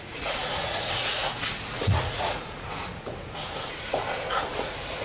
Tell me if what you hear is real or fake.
fake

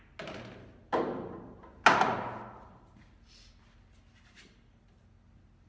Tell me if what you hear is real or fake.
real